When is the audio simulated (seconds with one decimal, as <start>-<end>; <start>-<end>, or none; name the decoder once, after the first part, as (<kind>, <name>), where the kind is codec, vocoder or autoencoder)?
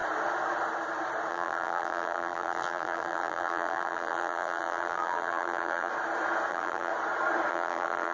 1.3-5.9 (vocoder, BigVGAN v2); 6.5-6.9; 7.5-8.1